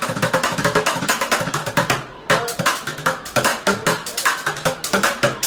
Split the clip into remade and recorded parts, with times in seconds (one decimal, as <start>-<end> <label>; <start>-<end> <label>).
0.0-1.6 remade; 1.6-2.6 recorded; 2.6-5.5 remade